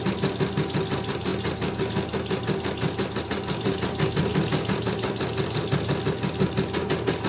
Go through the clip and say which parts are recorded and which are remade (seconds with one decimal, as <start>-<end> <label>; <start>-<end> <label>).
0.0-7.3 recorded